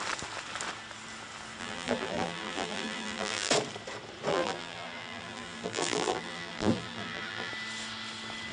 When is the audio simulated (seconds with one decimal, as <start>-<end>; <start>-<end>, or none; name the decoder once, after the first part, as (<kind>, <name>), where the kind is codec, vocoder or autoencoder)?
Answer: 1.6-3.5 (vocoder, BigVGAN v2); 4.3-7.5